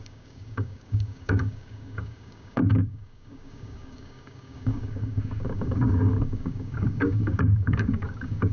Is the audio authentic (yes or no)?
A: no